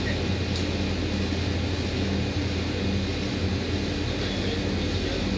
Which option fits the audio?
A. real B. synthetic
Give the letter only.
A